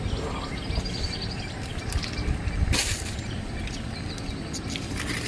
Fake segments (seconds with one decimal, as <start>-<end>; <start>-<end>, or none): none